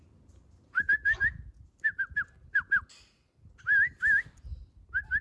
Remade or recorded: recorded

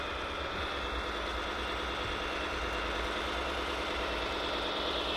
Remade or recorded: recorded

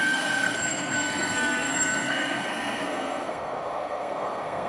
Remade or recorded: remade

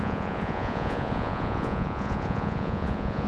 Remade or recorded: remade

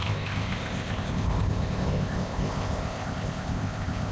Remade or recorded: remade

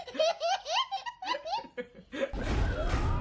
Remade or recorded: recorded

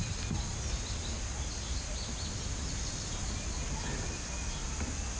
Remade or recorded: recorded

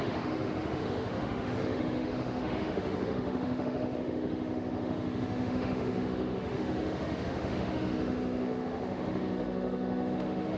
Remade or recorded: remade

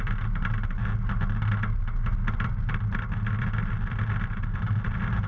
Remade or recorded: recorded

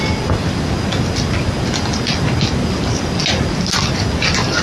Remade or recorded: recorded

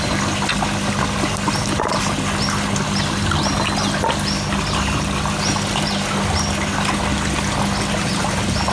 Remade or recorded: recorded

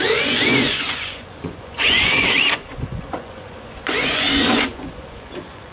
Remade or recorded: remade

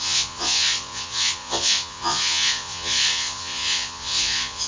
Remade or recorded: remade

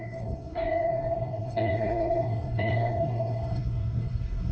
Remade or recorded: remade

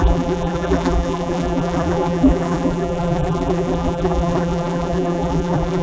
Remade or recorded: remade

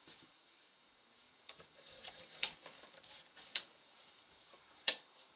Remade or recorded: remade